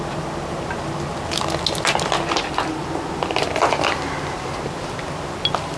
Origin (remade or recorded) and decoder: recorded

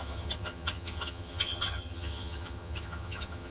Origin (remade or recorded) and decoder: remade, vocoder, HiFi-GAN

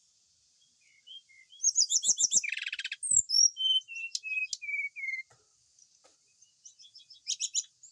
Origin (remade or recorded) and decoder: recorded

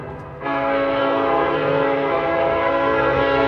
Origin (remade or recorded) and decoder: remade, codec, SNAC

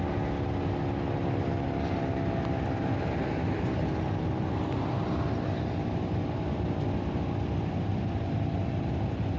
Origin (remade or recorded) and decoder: recorded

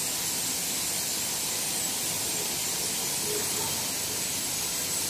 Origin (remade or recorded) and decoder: recorded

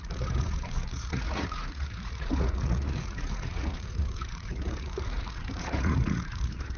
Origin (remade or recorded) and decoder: remade, vocoder, Vocos